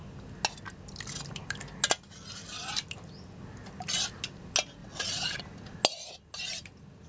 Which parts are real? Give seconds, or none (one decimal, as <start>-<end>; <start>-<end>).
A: 0.0-4.8; 5.4-7.1